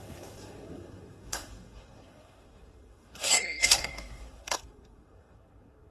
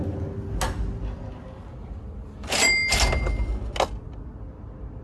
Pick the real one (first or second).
second